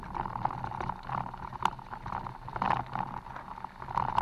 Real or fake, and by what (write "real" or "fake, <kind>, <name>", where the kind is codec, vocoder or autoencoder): real